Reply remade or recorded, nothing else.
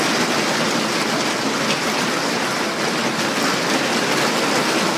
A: recorded